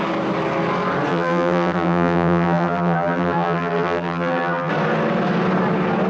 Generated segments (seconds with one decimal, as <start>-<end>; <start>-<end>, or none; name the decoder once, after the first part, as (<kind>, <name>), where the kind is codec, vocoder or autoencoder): 1.1-4.7 (vocoder, BigVGAN v2)